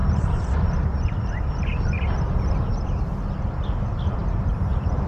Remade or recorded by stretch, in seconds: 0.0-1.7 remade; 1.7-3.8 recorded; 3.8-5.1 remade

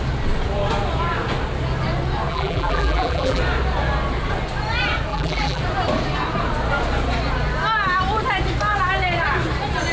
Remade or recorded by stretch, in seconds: 0.0-2.3 recorded; 2.3-3.4 remade; 3.4-5.1 recorded; 5.1-5.6 remade; 5.6-9.9 recorded

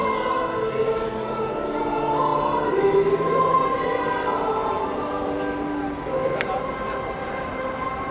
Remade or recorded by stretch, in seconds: 0.0-8.1 remade

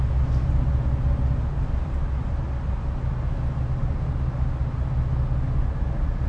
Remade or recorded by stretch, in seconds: 0.0-6.3 recorded